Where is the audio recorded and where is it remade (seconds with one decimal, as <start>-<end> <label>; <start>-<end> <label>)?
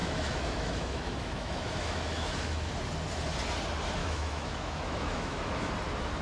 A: 0.0-2.7 remade; 2.7-4.0 recorded; 4.0-5.7 remade; 5.7-6.2 recorded